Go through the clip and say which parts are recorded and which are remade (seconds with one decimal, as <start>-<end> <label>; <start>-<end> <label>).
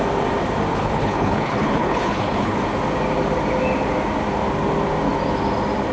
0.0-0.7 recorded; 0.7-2.6 remade; 2.6-5.9 recorded